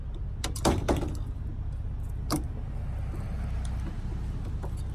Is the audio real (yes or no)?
yes